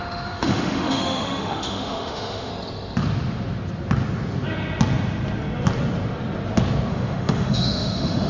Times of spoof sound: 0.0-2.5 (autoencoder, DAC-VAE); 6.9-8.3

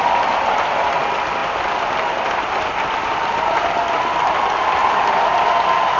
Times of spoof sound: none